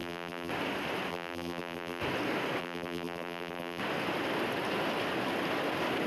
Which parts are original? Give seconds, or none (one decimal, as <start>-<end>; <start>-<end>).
0.5-1.1; 2.0-2.6; 3.8-6.1